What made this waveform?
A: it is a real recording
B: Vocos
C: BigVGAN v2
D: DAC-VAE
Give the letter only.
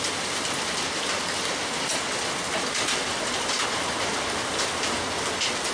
A